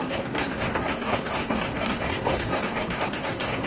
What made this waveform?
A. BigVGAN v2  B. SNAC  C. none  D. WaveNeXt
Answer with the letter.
B